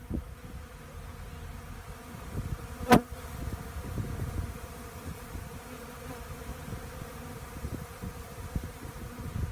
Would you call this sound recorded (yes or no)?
yes